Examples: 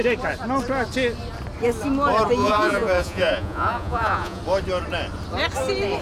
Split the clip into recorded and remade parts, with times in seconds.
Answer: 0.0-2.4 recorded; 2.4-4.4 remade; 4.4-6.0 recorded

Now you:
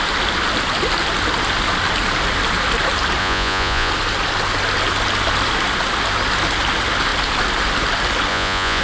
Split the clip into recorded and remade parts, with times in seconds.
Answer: 0.0-3.2 recorded; 3.2-3.9 remade; 3.9-8.3 recorded; 8.3-8.8 remade

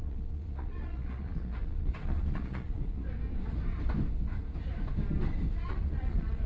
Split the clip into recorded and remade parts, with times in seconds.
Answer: 0.0-3.0 remade; 3.0-5.7 recorded; 5.7-6.5 remade